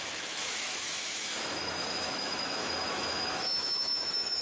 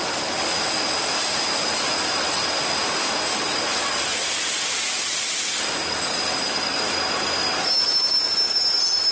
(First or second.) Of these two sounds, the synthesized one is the first